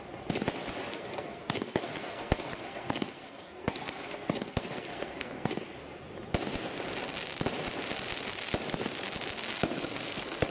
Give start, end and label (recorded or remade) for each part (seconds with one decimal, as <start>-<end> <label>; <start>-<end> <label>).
0.0-0.9 recorded; 0.9-5.6 remade; 5.6-9.6 recorded; 9.6-10.5 remade

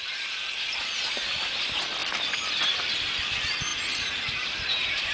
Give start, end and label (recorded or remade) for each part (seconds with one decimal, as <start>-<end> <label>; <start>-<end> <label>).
0.0-5.1 recorded

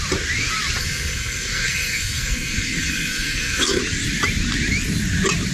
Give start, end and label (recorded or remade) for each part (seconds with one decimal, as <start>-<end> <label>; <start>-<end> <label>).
0.0-0.8 recorded; 0.8-3.8 remade; 3.8-5.5 recorded

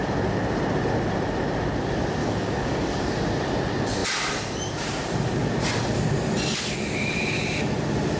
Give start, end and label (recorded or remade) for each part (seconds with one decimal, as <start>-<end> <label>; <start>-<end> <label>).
0.0-2.2 recorded; 2.2-3.2 remade; 3.2-8.2 recorded

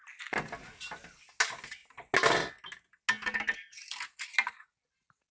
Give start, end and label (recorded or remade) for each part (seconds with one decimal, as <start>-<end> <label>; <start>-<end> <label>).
0.0-5.3 recorded

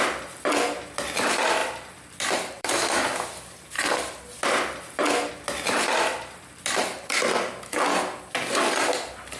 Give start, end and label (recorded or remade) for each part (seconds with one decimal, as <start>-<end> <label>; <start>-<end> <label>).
0.0-1.6 recorded; 1.6-5.3 remade; 5.3-6.8 recorded; 6.8-7.7 remade; 7.7-9.4 recorded

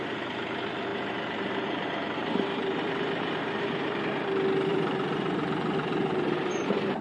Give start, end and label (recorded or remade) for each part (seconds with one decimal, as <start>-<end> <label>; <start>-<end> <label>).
0.0-0.9 recorded; 0.9-4.0 remade; 4.0-4.7 recorded; 4.7-7.0 remade